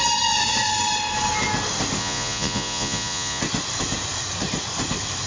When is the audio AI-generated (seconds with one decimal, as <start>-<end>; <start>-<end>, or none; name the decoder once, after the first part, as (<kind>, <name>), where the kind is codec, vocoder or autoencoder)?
2.0-3.4 (vocoder, Vocos)

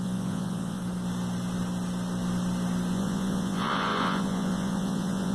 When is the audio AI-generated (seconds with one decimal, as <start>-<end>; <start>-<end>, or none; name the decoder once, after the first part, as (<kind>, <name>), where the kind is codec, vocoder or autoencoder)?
0.0-0.8 (vocoder, Vocos); 2.9-5.3

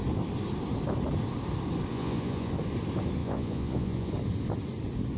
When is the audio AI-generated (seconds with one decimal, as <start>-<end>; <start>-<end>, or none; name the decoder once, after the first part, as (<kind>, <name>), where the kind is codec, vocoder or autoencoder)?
1.9-2.5 (vocoder, Vocos); 3.2-4.1

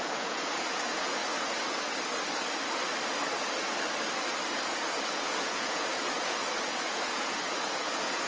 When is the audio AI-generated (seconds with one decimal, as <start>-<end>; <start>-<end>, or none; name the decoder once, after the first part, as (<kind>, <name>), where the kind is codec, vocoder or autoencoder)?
0.0-1.2 (vocoder, Vocos); 5.1-8.3

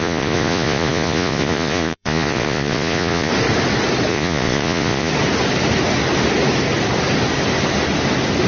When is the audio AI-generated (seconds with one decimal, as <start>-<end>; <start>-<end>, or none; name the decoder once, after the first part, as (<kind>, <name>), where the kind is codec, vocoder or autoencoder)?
0.0-3.3 (vocoder, Vocos); 4.1-5.1

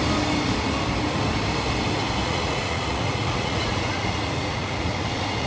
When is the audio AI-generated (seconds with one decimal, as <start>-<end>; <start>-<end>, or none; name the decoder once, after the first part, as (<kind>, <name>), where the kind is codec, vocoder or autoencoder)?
2.2-5.5 (vocoder, Vocos)

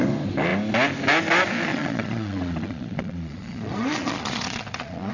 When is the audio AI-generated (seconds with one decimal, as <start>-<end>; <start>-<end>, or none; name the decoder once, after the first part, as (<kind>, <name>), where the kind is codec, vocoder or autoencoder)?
1.7-5.1 (vocoder, Vocos)